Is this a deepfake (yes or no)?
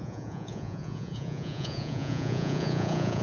yes